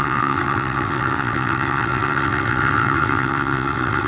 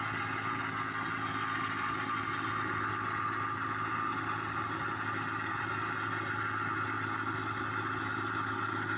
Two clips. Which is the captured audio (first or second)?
second